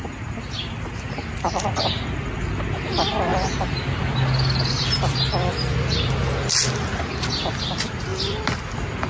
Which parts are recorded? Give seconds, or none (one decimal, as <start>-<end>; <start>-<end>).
0.0-9.1